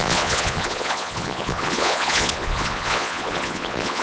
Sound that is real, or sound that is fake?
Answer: fake